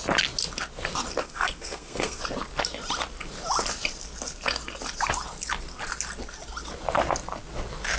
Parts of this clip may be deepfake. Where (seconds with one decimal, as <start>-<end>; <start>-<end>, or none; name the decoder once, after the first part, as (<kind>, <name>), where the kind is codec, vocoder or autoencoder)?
1.2-2.2 (codec, SNAC)